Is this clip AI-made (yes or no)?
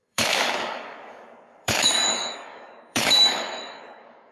yes